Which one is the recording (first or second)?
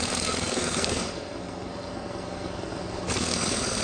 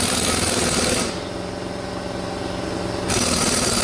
second